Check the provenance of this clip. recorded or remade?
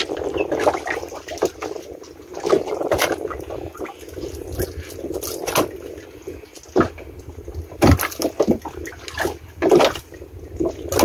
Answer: recorded